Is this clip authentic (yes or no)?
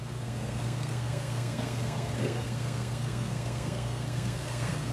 no